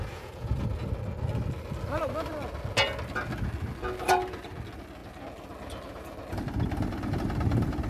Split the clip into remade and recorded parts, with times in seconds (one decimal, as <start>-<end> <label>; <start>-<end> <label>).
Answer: 0.0-0.6 remade; 0.6-7.9 recorded